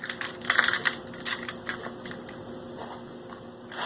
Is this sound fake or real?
fake